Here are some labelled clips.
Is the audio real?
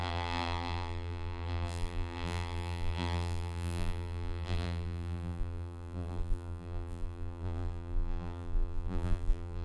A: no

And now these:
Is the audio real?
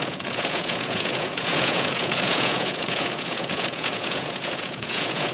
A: no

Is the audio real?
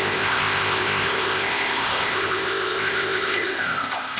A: no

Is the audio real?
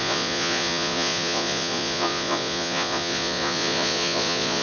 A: no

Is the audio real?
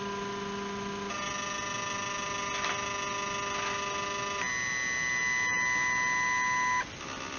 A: yes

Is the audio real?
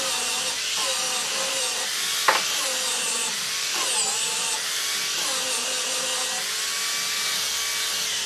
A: yes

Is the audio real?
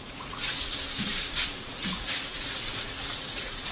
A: no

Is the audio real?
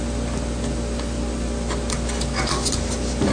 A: yes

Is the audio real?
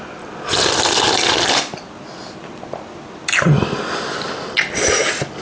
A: yes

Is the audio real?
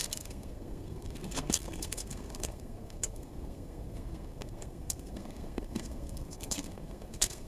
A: no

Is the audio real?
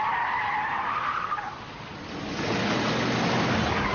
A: yes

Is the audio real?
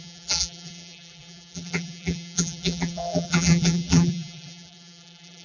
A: no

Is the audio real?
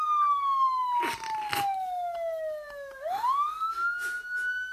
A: yes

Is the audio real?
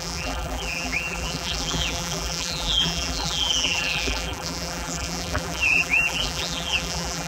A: no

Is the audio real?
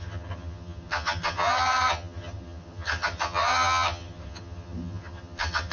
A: no